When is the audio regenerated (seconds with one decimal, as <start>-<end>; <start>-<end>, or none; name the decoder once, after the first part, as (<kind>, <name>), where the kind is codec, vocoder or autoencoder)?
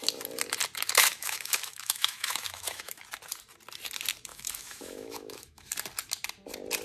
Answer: 1.1-3.0 (autoencoder, DAC-VAE); 4.3-5.7